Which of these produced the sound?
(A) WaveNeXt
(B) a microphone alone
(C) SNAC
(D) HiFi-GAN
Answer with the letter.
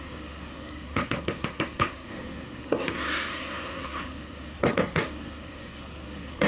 C